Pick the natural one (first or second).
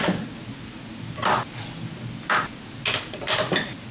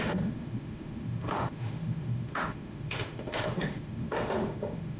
first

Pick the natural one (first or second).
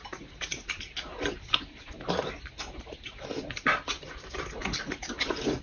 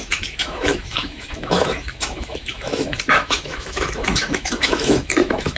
first